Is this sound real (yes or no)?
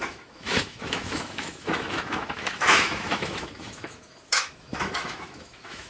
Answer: no